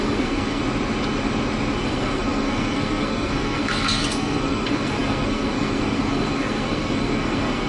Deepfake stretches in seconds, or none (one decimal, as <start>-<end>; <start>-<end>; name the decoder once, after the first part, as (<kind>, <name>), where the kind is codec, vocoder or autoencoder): 0.0-0.6 (codec, SNAC); 1.8-7.7